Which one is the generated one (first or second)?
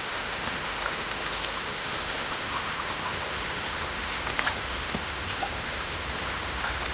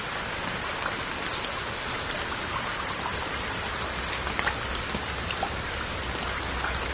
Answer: first